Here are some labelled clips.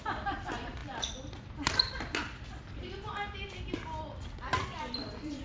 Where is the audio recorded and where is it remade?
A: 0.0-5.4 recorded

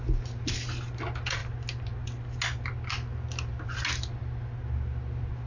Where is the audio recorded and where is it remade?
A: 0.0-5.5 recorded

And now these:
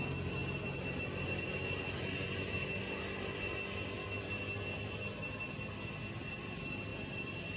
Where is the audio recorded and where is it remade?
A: 0.0-7.6 recorded

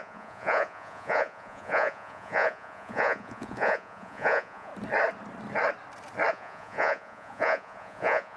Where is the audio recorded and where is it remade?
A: 0.0-4.7 remade; 4.7-6.3 recorded; 6.3-8.4 remade

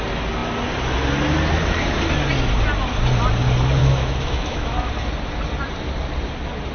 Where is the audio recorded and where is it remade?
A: 0.0-3.8 recorded; 3.8-4.9 remade; 4.9-6.7 recorded

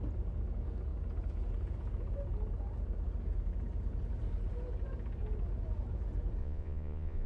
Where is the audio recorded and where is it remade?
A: 0.0-6.4 recorded; 6.4-7.3 remade